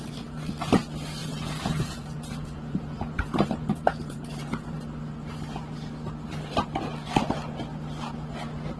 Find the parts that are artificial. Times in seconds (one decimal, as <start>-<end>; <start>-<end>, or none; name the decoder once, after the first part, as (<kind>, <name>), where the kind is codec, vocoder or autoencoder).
1.2-4.8 (vocoder, Vocos)